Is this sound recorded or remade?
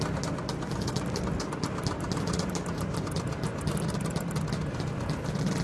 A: recorded